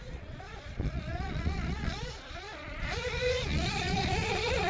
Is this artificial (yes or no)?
yes